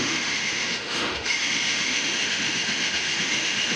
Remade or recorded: remade